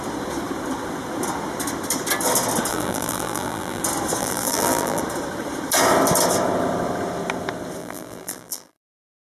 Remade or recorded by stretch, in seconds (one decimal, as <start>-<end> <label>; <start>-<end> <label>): 0.0-2.7 recorded; 2.7-3.8 remade; 3.8-4.2 recorded; 4.2-5.0 remade; 5.0-7.8 recorded; 7.8-9.4 remade